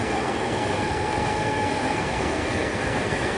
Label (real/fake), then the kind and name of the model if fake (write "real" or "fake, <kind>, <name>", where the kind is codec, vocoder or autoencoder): fake, codec, SNAC